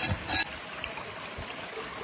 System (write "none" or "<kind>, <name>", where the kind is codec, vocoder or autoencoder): none